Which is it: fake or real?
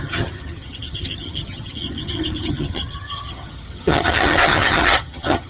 fake